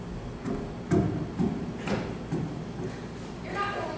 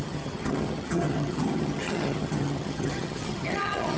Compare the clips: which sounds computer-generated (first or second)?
second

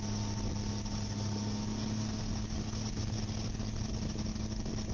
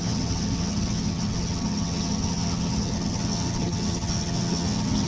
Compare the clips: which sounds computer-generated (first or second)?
second